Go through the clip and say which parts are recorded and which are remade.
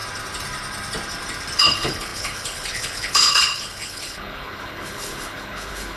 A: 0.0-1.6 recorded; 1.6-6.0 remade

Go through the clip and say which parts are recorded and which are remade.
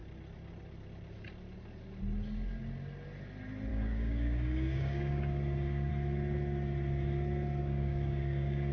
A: 0.0-3.7 recorded; 3.7-5.9 remade; 5.9-7.6 recorded; 7.6-8.7 remade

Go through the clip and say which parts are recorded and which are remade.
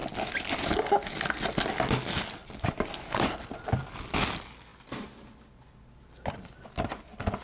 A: 0.0-2.4 recorded; 2.4-3.8 remade; 3.8-7.4 recorded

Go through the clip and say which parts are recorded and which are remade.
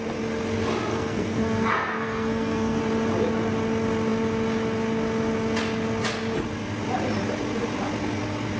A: 0.0-0.9 recorded; 0.9-2.8 remade; 2.8-8.6 recorded